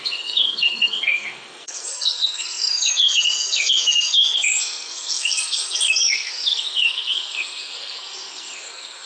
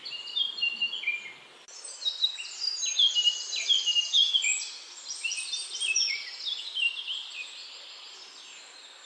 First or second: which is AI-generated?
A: first